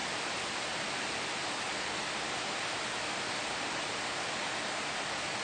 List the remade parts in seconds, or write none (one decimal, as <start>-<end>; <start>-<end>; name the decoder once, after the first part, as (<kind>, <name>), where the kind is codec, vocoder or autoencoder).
none